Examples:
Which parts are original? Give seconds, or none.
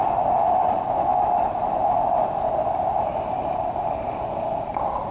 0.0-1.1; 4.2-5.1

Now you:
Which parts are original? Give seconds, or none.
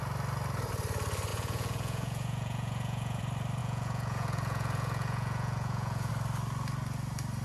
0.0-1.3; 3.2-3.6; 6.1-7.4